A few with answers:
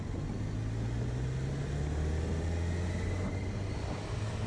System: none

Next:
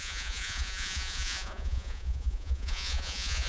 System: vocoder, Vocos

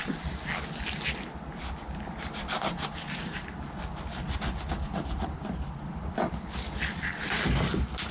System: none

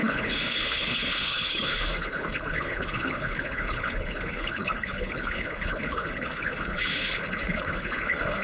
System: codec, HILCodec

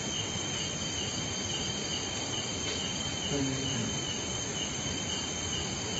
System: none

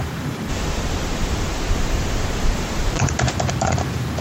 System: vocoder, BigVGAN v2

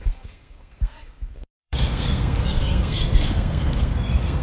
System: codec, SNAC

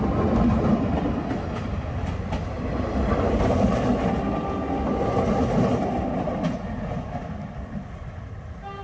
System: none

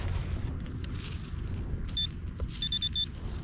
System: none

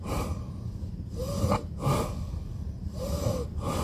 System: none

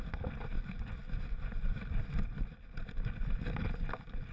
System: none